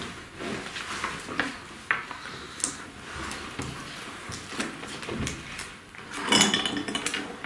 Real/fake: real